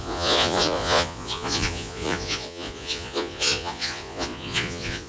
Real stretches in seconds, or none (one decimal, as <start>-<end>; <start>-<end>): none